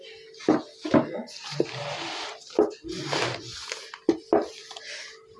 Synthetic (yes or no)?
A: no